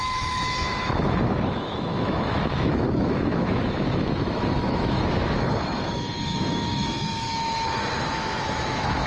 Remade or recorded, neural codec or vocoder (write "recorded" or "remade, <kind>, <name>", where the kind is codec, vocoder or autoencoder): remade, autoencoder, DAC-VAE